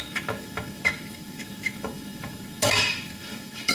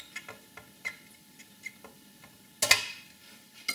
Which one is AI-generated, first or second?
first